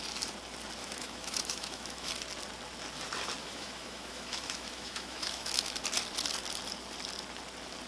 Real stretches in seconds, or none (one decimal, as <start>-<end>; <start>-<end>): 0.0-0.8; 2.1-3.4; 5.8-7.9